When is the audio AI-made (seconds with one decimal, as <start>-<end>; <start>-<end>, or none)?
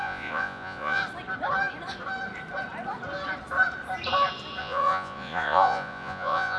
0.0-1.0; 4.6-6.6